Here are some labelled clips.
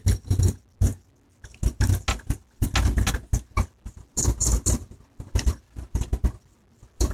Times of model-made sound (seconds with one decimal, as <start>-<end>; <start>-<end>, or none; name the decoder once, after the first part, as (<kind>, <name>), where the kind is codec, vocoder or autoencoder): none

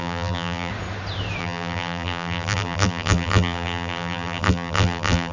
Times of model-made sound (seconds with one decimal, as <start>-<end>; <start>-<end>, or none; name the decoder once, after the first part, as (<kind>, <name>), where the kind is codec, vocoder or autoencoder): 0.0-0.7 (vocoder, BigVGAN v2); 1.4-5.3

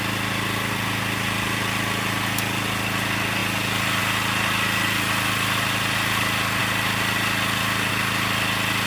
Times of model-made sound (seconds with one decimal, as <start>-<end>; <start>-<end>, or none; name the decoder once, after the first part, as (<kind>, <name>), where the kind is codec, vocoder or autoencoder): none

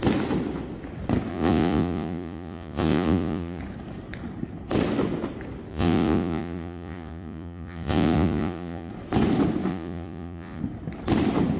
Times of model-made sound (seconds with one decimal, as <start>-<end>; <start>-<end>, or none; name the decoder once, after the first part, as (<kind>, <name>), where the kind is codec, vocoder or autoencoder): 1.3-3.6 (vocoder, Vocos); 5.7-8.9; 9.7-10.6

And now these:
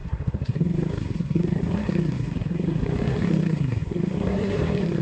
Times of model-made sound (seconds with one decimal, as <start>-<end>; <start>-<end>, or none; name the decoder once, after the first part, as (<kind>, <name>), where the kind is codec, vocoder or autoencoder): 0.0-5.0 (codec, SNAC)